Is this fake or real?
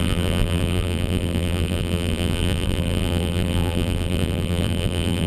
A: fake